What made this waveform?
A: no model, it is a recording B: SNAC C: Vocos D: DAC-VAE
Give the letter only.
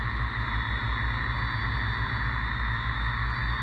A